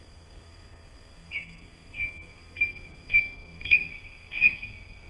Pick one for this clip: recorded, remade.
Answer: remade